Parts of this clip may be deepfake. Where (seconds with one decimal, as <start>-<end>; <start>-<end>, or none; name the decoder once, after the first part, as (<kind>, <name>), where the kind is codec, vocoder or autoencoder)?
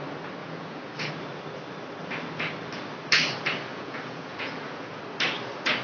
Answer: 0.4-1.1 (vocoder, Vocos); 3.7-5.0